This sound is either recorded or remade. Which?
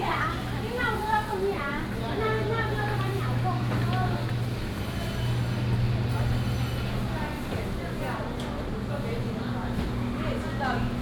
recorded